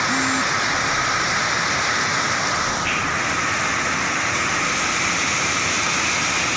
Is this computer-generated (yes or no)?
no